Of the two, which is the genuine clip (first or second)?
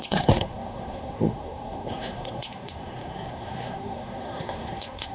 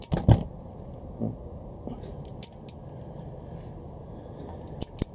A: second